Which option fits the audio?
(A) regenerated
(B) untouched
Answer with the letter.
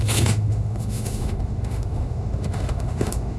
A